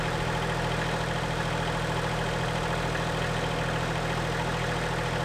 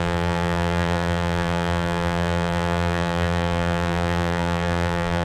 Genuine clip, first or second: first